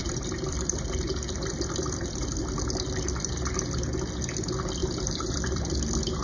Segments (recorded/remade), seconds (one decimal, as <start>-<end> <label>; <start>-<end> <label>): 0.0-2.4 remade; 2.4-4.8 recorded; 4.8-5.7 remade; 5.7-6.2 recorded